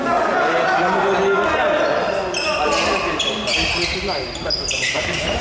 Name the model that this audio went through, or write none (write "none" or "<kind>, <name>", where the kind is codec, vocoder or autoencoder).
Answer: none